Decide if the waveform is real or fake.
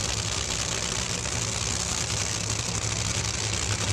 real